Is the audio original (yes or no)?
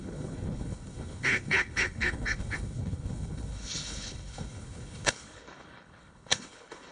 no